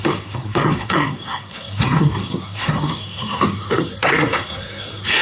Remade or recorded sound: remade